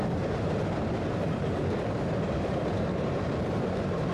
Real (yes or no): no